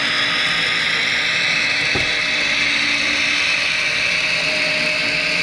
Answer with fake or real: real